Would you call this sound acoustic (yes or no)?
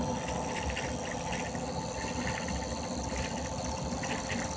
yes